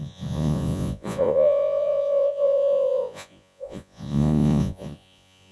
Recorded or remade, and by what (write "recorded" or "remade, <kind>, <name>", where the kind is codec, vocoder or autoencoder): remade, vocoder, Vocos